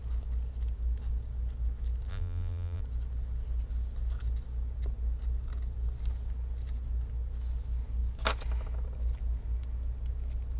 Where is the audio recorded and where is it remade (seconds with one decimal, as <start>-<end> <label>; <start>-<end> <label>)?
0.0-2.1 recorded; 2.1-2.8 remade; 2.8-10.6 recorded